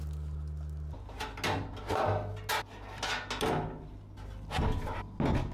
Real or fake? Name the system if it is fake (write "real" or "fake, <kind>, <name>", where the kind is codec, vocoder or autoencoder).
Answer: real